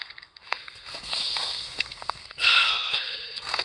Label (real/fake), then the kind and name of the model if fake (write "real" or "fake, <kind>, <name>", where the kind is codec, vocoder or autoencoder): fake, codec, SNAC